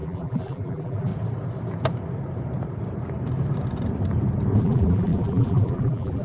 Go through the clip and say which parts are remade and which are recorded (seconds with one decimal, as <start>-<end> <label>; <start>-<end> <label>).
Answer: 0.0-1.1 remade; 1.1-4.6 recorded; 4.6-6.2 remade